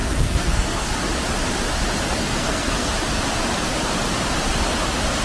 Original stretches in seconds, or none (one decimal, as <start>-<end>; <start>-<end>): 0.9-2.2; 2.9-5.2